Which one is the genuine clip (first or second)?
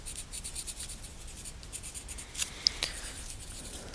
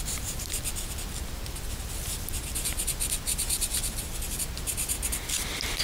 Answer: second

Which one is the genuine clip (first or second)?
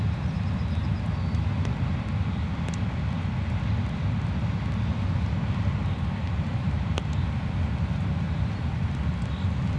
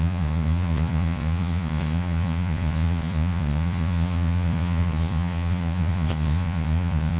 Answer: first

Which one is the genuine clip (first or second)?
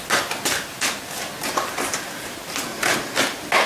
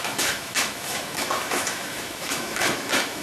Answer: first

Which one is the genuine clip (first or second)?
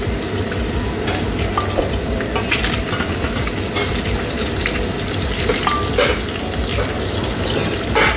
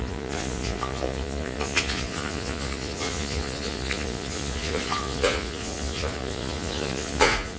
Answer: first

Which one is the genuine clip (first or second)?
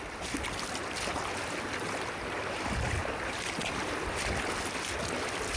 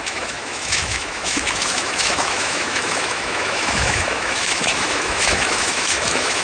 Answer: first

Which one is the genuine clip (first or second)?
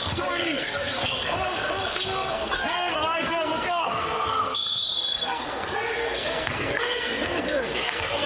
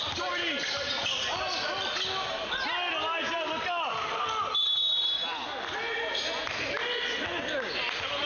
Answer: second